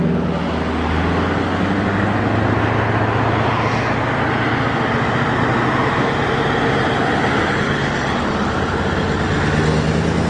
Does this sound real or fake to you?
real